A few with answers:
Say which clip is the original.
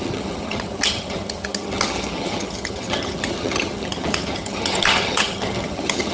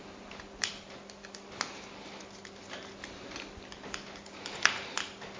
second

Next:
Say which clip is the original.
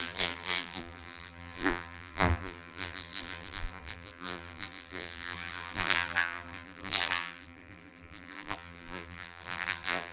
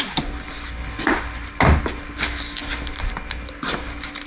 second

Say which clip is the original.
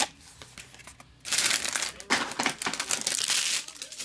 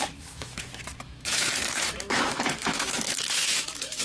first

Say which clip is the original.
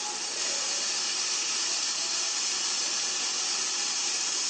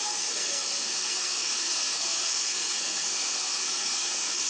first